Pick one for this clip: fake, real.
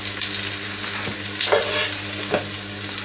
real